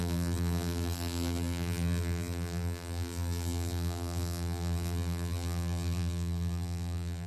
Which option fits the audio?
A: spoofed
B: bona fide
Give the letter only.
A